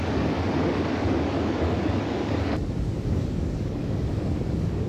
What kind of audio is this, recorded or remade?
remade